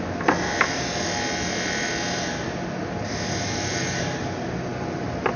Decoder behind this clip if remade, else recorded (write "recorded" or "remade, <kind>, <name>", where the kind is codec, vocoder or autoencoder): recorded